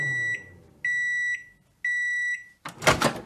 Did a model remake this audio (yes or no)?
no